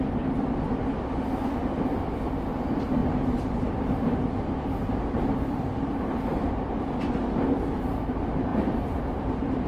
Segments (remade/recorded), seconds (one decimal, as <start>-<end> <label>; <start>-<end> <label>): 0.0-3.0 recorded; 3.0-6.8 remade; 6.8-8.5 recorded; 8.5-9.7 remade